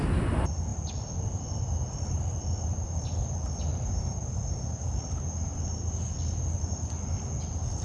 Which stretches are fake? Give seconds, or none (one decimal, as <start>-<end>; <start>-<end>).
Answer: 3.7-4.4

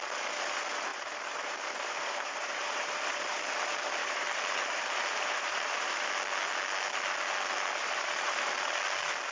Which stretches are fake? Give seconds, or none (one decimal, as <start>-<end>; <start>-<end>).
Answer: 0.9-3.2; 4.0-6.1; 7.8-8.5

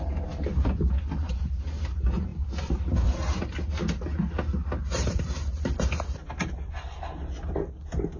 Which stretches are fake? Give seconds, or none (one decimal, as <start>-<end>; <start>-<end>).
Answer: none

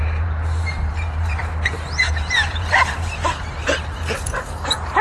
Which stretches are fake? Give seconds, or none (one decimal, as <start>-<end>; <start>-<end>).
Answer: 0.0-5.0

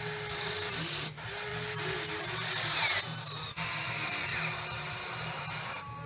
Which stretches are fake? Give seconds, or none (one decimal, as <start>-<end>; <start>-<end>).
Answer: none

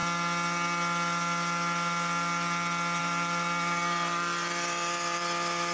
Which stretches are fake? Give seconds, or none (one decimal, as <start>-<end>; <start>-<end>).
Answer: 3.0-5.7

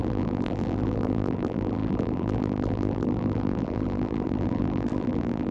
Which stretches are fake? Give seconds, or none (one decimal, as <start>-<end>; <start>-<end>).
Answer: 0.0-5.5

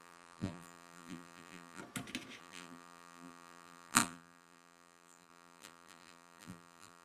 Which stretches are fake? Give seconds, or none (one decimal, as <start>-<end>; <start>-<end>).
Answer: 0.0-1.8; 2.4-7.0